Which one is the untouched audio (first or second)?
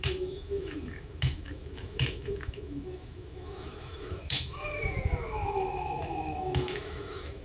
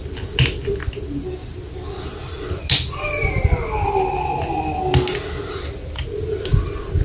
second